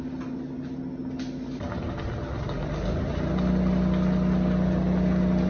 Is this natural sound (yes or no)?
yes